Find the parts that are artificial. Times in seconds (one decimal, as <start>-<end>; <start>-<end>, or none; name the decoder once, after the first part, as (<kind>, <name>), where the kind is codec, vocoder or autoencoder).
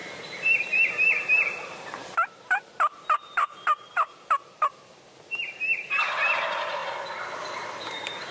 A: 0.0-6.8 (vocoder, BigVGAN v2); 7.8-8.3